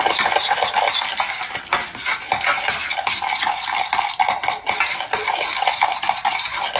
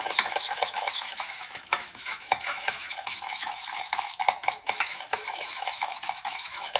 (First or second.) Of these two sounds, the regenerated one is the second